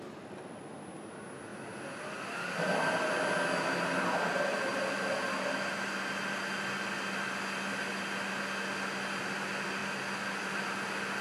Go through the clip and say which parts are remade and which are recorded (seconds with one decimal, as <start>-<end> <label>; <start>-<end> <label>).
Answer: 0.0-11.2 recorded

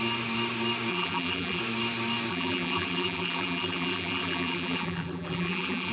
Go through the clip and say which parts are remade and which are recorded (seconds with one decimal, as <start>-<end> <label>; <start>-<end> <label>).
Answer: 0.0-0.9 recorded; 0.9-1.6 remade; 1.6-2.3 recorded; 2.3-5.9 remade

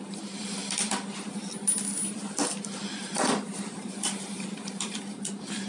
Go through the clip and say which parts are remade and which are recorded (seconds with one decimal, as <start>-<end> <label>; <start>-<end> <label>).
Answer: 0.0-0.6 remade; 0.6-3.0 recorded; 3.0-5.7 remade

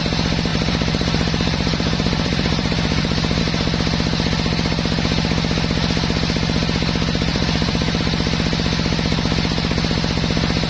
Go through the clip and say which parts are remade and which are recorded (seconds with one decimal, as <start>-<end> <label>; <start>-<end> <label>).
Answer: 0.0-0.5 recorded; 0.5-3.4 remade; 3.4-7.3 recorded; 7.3-8.0 remade; 8.0-10.7 recorded

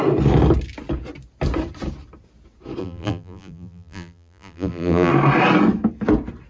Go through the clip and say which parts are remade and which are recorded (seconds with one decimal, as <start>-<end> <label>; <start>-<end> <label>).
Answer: 0.0-2.8 recorded; 2.8-5.1 remade; 5.1-6.5 recorded

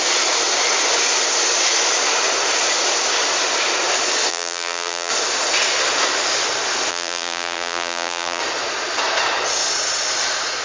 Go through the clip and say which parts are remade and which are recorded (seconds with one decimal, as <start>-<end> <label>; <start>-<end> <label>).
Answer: 0.0-4.3 recorded; 4.3-5.1 remade; 5.1-6.9 recorded; 6.9-8.4 remade; 8.4-10.6 recorded